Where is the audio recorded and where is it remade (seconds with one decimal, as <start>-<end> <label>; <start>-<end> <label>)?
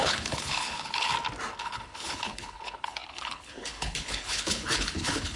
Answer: 0.0-1.1 remade; 1.1-1.6 recorded; 1.6-5.4 remade